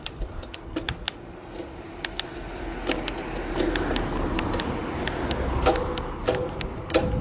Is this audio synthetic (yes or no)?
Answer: no